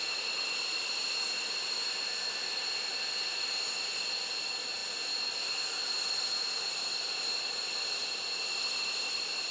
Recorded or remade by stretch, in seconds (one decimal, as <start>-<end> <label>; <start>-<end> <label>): 0.0-9.5 recorded